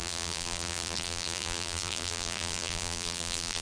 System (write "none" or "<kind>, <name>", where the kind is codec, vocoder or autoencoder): vocoder, BigVGAN v2